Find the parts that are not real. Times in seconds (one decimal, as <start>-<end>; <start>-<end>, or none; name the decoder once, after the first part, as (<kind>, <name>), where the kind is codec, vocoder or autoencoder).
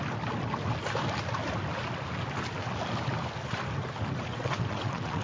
4.3-5.2 (vocoder, WaveNeXt)